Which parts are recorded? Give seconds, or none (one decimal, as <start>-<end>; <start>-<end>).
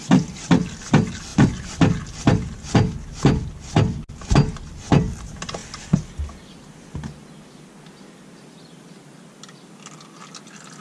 0.0-10.8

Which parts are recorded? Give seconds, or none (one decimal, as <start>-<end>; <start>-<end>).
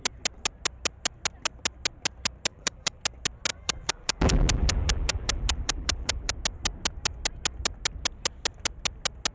0.0-2.5; 3.0-3.5; 6.3-9.3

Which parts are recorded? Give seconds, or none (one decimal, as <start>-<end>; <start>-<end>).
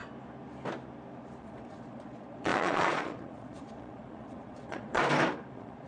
0.0-1.4; 5.0-5.5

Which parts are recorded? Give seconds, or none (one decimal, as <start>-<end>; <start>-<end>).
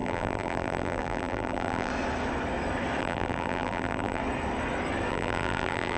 1.9-3.0; 4.2-5.1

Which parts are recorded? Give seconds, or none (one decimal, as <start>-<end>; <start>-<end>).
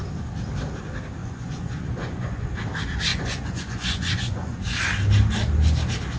0.0-1.2; 2.5-3.1; 4.9-6.2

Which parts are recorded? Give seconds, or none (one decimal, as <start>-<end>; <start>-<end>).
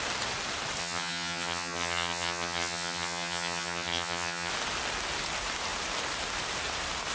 0.0-0.8; 4.5-7.1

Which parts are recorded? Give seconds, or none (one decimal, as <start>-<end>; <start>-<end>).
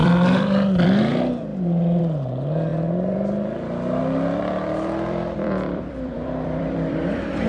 1.0-1.5; 2.0-2.7; 7.0-7.5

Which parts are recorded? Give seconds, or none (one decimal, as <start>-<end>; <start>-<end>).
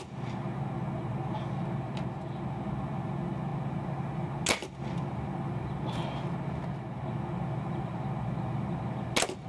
0.0-9.5